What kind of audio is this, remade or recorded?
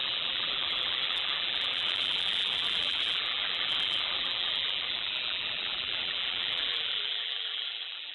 remade